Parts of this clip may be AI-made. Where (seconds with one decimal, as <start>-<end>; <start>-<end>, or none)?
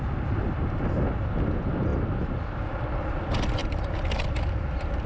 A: none